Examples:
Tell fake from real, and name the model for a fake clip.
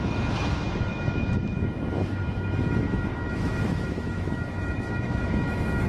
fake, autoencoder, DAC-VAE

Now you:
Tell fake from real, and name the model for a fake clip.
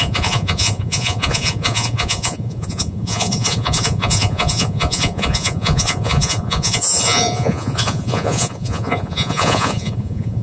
fake, vocoder, Vocos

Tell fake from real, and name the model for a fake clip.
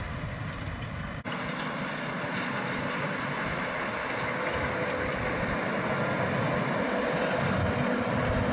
real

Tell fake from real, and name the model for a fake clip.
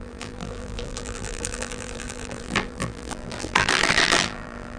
fake, vocoder, BigVGAN v2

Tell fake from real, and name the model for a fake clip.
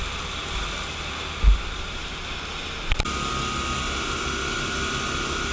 real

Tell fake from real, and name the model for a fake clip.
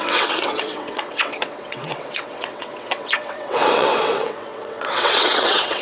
fake, vocoder, WaveNeXt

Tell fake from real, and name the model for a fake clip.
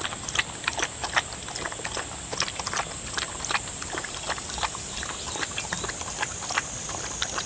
fake, vocoder, BigVGAN v2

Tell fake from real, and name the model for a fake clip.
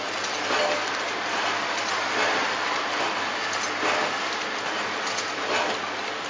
real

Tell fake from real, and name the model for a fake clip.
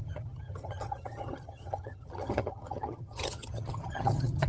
fake, vocoder, HiFi-GAN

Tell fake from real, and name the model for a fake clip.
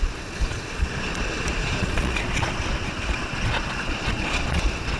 fake, vocoder, Vocos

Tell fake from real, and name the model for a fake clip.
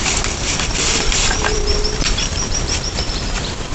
fake, vocoder, BigVGAN v2